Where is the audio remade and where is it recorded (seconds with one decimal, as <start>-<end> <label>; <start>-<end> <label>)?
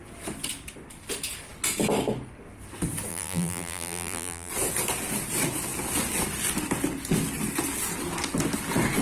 0.0-3.1 recorded; 3.1-4.5 remade; 4.5-9.0 recorded